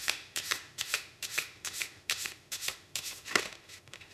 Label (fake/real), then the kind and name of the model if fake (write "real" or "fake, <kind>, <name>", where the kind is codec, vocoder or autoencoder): fake, autoencoder, DAC-VAE